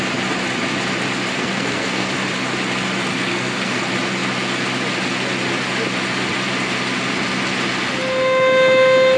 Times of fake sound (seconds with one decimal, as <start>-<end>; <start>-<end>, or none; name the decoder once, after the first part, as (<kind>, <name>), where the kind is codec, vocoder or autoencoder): 1.3-2.1 (codec, SNAC); 3.1-3.8